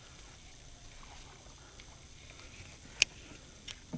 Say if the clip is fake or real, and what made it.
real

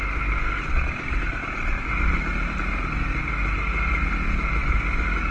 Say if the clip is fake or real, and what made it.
real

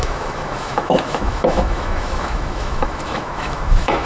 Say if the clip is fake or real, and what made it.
fake, autoencoder, DAC-VAE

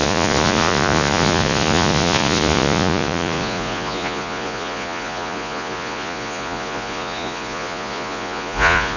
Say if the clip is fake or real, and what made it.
fake, vocoder, Vocos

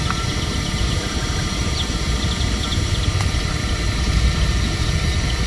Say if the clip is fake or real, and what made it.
real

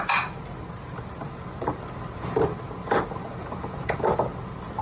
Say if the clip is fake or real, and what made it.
real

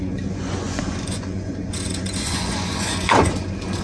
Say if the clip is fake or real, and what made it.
fake, vocoder, Vocos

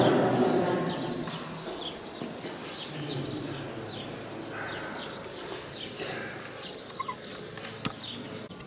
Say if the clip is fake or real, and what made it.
real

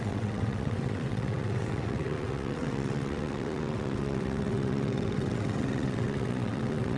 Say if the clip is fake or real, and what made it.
fake, vocoder, WaveNeXt